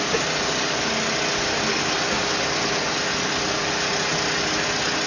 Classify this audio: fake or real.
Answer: real